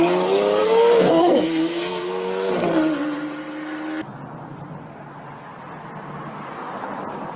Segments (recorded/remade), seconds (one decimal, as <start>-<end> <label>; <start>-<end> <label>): 0.0-0.6 recorded; 0.6-2.5 remade; 2.5-7.4 recorded